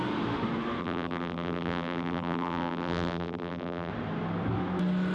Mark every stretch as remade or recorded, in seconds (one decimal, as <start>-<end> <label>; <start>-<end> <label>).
0.0-0.8 recorded; 0.8-3.9 remade; 3.9-5.1 recorded